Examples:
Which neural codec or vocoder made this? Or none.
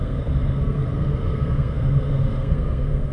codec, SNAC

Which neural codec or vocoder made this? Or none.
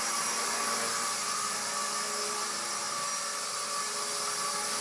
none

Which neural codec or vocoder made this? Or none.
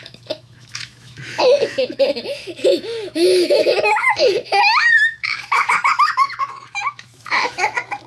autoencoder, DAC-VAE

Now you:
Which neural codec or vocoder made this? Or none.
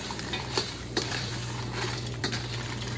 vocoder, BigVGAN v2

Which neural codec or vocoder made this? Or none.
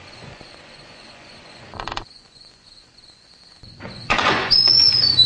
vocoder, Vocos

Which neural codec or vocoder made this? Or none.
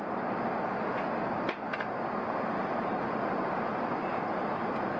none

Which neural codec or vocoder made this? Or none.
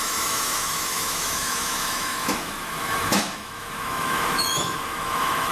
autoencoder, DAC-VAE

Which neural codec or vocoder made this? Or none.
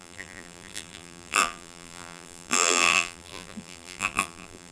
vocoder, BigVGAN v2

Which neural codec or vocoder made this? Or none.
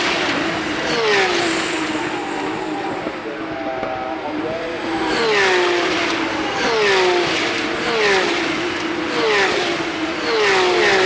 none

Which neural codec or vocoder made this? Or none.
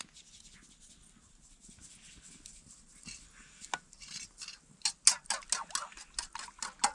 none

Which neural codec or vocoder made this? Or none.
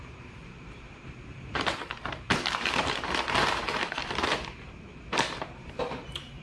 vocoder, BigVGAN v2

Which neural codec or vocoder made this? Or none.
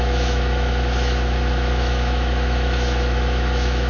autoencoder, DAC-VAE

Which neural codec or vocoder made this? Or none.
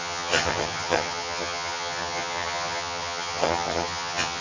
vocoder, HiFi-GAN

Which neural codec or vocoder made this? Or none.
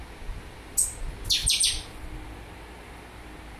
none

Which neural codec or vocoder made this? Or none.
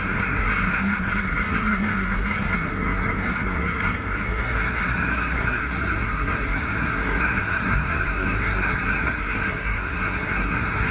codec, SNAC